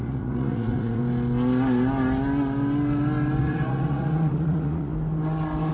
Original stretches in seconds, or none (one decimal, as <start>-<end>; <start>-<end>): 1.0-3.4; 4.9-5.7